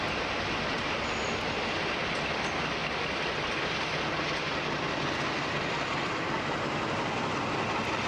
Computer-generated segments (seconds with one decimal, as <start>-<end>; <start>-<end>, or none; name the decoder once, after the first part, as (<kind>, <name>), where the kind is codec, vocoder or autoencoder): none